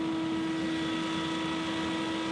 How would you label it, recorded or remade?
recorded